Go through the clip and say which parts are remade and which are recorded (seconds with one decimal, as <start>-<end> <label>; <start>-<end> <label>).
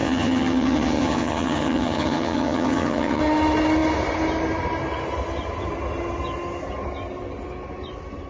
0.0-3.2 remade; 3.2-8.3 recorded